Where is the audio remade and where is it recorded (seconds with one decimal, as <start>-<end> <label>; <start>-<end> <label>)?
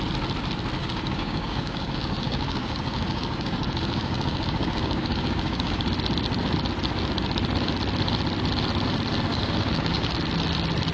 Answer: 0.0-0.8 recorded; 0.8-5.9 remade; 5.9-9.3 recorded; 9.3-10.1 remade; 10.1-10.9 recorded